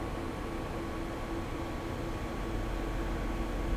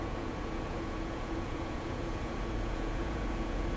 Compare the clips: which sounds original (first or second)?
first